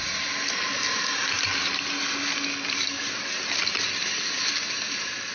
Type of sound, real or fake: real